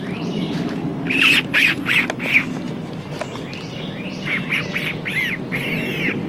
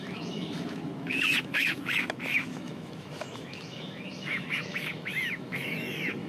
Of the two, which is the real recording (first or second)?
first